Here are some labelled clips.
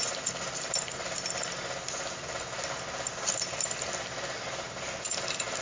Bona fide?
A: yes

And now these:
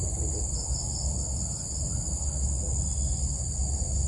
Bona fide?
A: yes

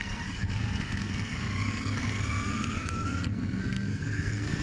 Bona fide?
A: no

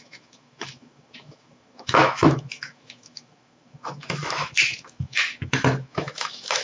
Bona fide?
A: no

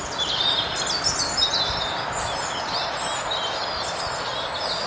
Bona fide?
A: yes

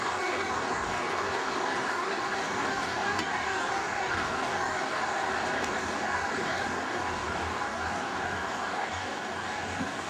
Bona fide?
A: no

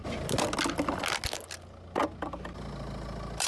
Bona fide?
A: yes